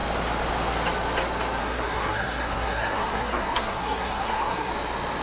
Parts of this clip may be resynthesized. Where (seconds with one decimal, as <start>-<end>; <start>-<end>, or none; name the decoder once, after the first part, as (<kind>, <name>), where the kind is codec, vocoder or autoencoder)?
1.6-4.7 (codec, SNAC)